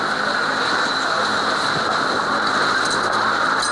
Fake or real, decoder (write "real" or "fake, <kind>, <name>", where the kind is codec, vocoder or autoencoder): real